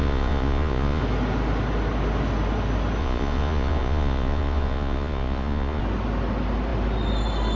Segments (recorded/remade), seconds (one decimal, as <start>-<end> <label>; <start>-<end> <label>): 0.0-1.0 remade; 1.0-3.0 recorded; 3.0-5.8 remade; 5.8-7.6 recorded